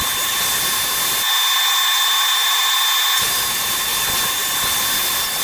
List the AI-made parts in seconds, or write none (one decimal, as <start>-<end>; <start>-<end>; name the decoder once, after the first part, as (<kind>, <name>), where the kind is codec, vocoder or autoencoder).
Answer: none